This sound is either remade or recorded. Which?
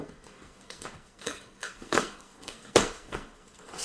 remade